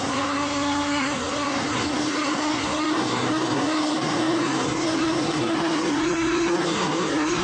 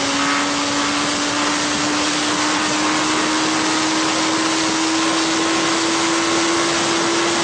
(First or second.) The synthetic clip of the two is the first